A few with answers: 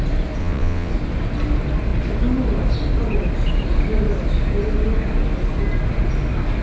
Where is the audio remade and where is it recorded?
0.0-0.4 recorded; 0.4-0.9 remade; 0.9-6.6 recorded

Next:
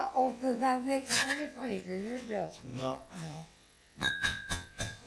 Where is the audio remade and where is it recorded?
0.0-5.1 remade

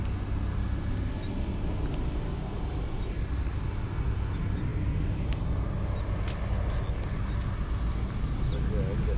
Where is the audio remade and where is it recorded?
0.0-9.2 recorded